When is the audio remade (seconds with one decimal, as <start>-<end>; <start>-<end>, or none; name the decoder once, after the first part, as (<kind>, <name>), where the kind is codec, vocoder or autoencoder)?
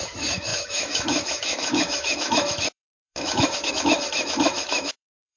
0.0-5.4 (autoencoder, DAC-VAE)